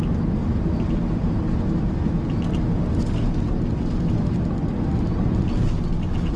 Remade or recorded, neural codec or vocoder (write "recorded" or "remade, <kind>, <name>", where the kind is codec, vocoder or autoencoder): recorded